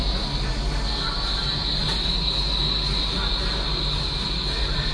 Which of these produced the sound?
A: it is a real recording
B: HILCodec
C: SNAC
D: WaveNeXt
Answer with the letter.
A